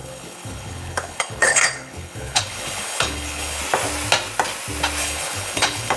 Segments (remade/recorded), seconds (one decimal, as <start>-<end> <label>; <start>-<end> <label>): 0.0-3.6 remade; 3.6-5.0 recorded; 5.0-6.0 remade